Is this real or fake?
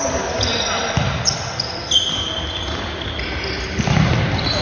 real